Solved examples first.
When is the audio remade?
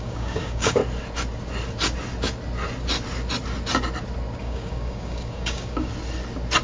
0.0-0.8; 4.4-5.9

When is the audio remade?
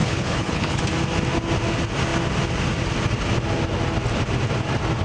0.0-0.8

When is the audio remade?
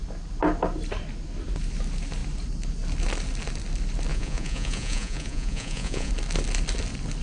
4.1-6.1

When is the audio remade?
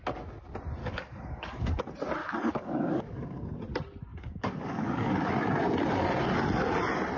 0.8-1.8; 2.2-3.5; 4.1-5.3